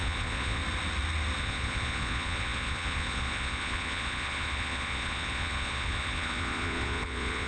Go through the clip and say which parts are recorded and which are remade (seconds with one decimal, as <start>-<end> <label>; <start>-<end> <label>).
0.0-0.6 remade; 0.6-1.4 recorded; 1.4-7.5 remade